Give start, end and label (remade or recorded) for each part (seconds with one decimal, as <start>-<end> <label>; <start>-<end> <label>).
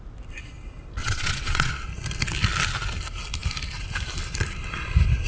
0.0-1.0 recorded; 1.0-1.7 remade; 1.7-5.3 recorded